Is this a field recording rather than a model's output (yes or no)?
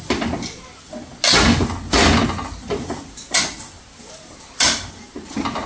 yes